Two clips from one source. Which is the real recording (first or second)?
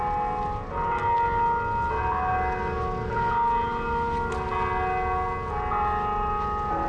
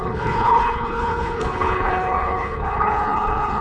first